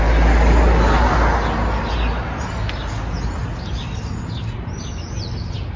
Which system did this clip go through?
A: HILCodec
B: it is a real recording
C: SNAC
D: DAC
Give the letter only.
B